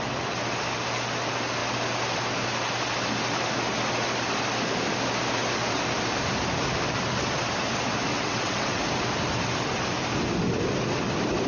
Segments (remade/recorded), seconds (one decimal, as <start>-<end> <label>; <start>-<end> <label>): 0.0-8.1 recorded; 8.1-8.8 remade; 8.8-11.5 recorded